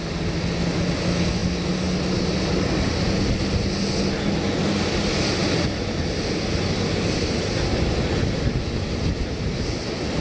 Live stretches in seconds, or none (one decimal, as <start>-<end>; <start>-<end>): 0.0-10.2